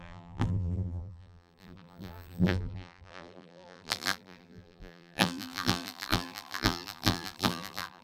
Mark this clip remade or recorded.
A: remade